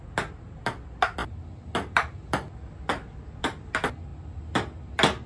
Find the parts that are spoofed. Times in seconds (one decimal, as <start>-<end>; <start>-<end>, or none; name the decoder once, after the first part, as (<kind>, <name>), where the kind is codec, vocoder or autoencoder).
none